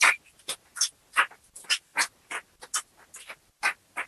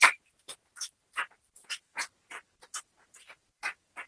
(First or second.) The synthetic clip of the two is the second